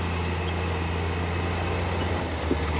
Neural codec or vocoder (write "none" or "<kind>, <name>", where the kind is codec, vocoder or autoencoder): none